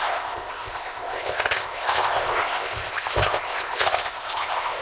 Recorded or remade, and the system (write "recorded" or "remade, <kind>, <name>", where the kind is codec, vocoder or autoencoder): remade, codec, ZipCodec